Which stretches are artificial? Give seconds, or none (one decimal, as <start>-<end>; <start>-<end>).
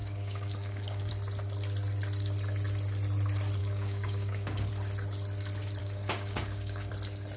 0.0-1.1; 3.6-4.7; 5.8-6.9